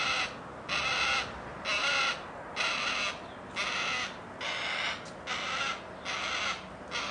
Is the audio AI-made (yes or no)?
no